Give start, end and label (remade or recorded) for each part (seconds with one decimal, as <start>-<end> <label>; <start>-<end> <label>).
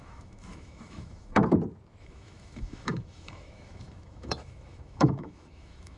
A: 0.0-1.4 remade; 1.4-2.0 recorded; 2.0-6.0 remade